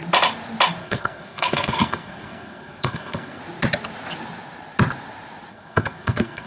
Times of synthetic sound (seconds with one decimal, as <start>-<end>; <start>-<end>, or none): 0.8-3.4; 5.5-6.5